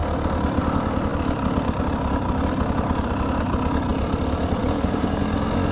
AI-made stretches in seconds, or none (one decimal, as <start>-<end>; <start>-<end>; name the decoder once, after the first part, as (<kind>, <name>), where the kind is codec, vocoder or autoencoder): 4.6-5.2 (codec, DAC)